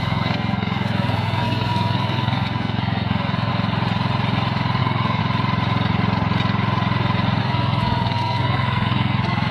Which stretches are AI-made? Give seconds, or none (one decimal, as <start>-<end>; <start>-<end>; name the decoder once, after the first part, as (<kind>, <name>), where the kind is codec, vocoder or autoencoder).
0.0-3.5 (codec, SNAC); 4.8-5.2; 7.4-9.5